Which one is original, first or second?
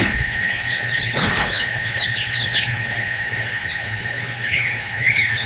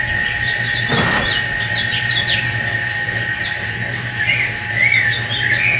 second